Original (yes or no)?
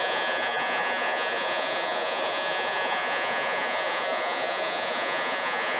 no